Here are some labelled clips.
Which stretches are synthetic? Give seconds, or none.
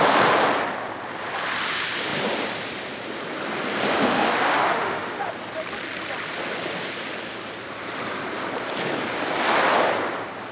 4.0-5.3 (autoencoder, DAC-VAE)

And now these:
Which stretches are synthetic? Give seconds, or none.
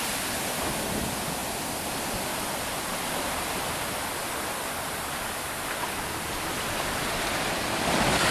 none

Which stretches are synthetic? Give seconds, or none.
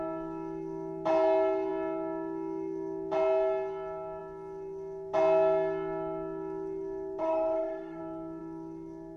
7.2-8.0 (codec, SNAC)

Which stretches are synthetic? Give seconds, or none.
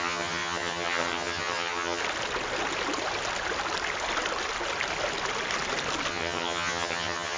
0.0-2.0 (vocoder, HiFi-GAN); 6.1-7.4